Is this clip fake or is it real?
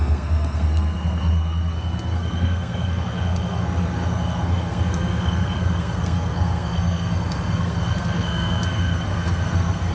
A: fake